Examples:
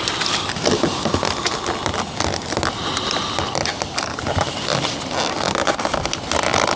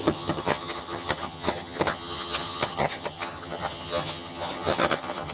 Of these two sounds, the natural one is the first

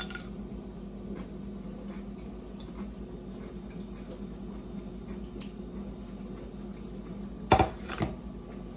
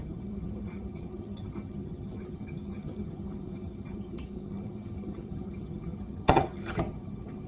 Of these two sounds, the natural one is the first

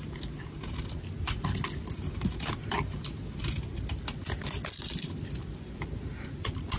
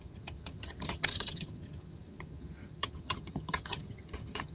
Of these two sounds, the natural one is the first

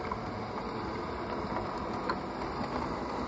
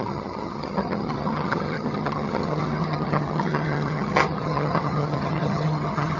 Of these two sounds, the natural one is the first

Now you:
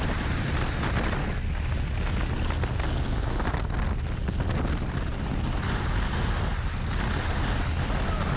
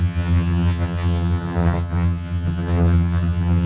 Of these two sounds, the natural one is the first